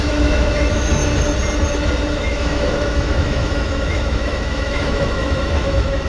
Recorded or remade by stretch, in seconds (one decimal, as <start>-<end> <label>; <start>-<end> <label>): 0.0-1.0 remade; 1.0-2.1 recorded; 2.1-6.1 remade